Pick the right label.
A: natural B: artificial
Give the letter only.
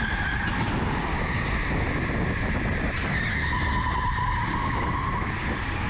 A